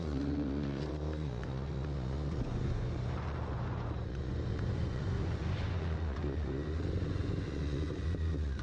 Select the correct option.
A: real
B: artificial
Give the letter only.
B